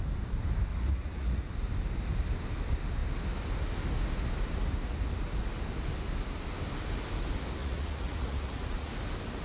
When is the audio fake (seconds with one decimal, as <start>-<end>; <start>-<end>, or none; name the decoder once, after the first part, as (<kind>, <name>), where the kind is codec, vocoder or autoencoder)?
0.7-1.4 (vocoder, Vocos); 7.6-8.9